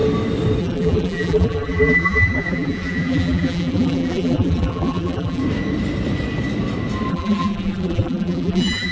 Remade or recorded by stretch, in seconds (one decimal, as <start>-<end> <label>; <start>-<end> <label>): 0.0-0.6 recorded; 0.6-5.4 remade; 5.4-7.1 recorded; 7.1-8.9 remade